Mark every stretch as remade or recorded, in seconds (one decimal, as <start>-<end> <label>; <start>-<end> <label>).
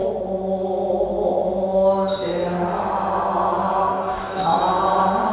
0.0-3.9 recorded; 3.9-4.6 remade; 4.6-5.3 recorded